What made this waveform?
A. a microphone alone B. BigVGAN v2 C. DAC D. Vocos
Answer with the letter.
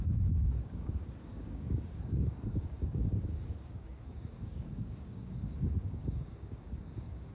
C